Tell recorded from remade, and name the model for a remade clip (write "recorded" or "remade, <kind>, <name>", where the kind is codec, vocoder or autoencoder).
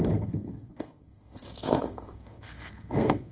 remade, codec, SNAC